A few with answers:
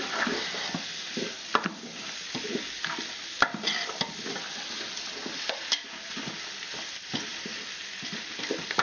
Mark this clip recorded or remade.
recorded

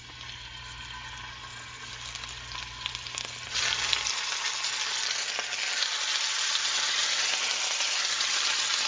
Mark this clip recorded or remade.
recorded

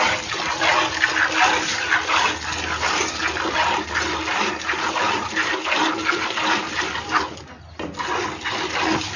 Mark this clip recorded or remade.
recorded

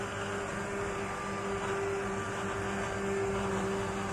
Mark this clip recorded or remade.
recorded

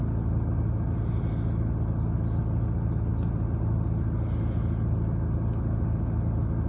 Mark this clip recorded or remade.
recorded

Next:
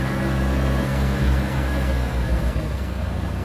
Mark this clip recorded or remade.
remade